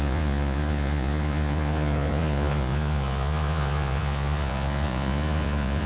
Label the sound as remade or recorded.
remade